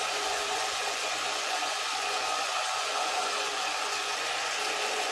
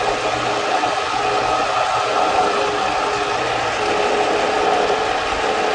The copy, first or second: first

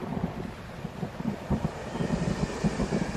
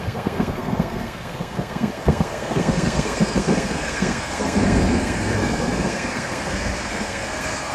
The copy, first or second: second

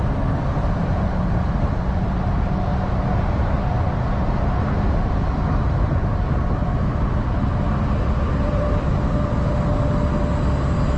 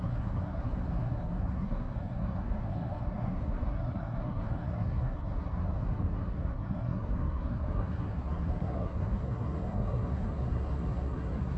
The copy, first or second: second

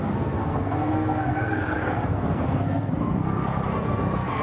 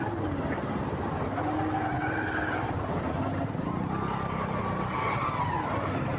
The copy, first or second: first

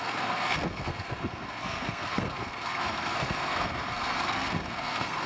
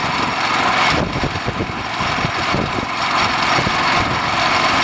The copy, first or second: first